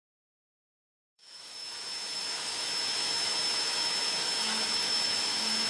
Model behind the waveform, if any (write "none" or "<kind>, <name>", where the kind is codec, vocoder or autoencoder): autoencoder, DAC-VAE